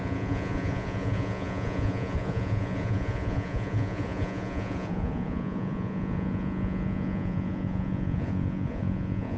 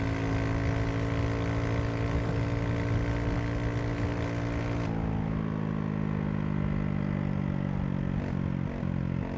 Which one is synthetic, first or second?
first